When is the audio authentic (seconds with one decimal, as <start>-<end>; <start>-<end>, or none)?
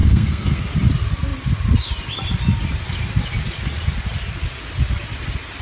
0.6-5.6